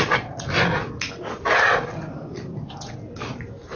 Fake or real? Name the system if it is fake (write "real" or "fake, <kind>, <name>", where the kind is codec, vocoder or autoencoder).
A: real